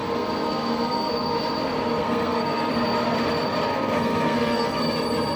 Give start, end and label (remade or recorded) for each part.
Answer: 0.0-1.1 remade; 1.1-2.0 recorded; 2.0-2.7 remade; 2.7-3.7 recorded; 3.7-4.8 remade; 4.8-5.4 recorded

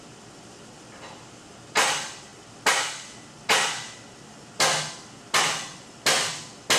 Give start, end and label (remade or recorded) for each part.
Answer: 0.0-6.8 recorded

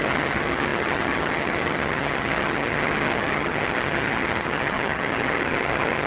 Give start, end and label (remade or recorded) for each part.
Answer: 0.0-6.1 remade

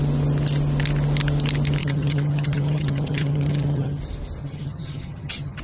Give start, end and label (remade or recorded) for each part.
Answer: 0.0-1.8 recorded; 1.8-4.0 remade; 4.0-4.4 recorded; 4.4-5.6 remade

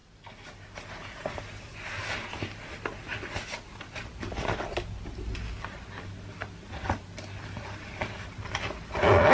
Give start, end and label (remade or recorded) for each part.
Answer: 0.0-9.3 recorded